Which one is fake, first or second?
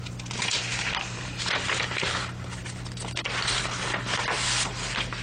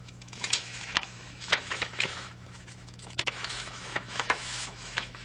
second